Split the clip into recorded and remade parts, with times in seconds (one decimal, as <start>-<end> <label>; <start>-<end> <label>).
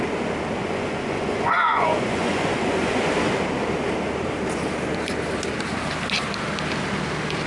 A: 0.0-0.6 recorded; 0.6-3.1 remade; 3.1-7.5 recorded